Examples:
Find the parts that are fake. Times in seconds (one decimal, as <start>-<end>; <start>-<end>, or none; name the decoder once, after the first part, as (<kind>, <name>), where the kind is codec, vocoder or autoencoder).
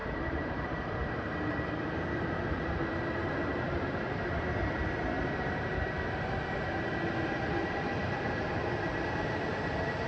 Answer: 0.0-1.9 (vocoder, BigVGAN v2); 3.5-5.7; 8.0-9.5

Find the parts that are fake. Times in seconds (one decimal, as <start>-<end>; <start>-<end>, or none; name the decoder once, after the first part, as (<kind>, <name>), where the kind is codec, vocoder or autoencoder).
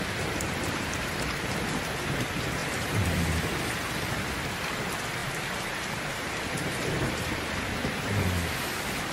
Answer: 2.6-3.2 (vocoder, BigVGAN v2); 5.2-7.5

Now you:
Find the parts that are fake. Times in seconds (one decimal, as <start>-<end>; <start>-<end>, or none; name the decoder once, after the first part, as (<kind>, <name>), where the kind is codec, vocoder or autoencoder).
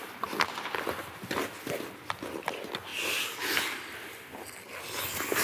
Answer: 2.9-4.4 (vocoder, BigVGAN v2)